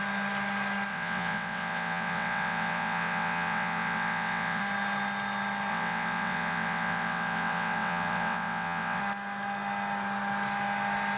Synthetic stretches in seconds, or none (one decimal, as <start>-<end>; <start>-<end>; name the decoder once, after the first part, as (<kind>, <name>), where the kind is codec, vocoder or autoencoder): 0.9-4.6 (vocoder, WaveNeXt); 5.7-9.0